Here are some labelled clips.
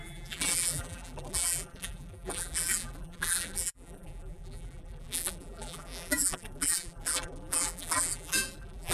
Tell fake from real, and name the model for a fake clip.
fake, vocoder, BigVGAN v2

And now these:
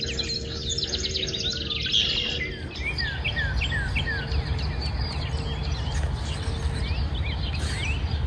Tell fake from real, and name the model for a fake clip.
real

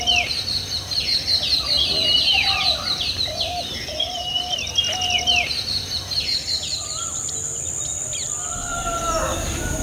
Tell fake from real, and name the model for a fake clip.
fake, vocoder, BigVGAN v2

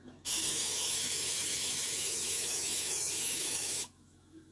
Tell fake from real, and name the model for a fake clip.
fake, autoencoder, DAC-VAE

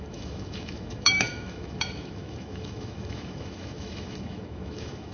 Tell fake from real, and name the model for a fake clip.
fake, autoencoder, DAC-VAE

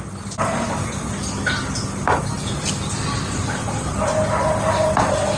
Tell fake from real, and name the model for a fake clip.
real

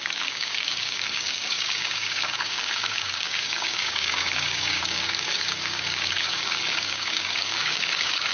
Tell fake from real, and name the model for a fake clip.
fake, codec, DAC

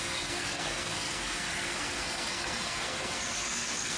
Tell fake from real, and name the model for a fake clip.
fake, codec, SNAC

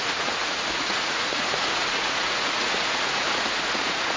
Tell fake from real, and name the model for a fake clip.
fake, vocoder, Vocos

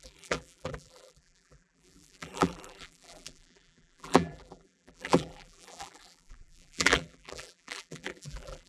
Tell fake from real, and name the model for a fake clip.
fake, vocoder, BigVGAN v2